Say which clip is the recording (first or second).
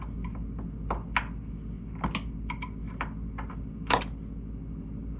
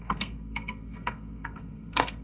first